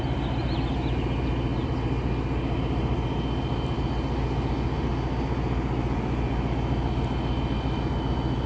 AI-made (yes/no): no